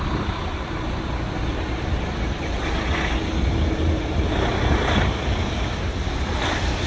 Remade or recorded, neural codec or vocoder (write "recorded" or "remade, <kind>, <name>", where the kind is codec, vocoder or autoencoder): recorded